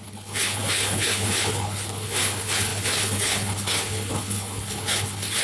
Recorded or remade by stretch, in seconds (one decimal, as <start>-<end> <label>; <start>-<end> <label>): 0.0-5.4 remade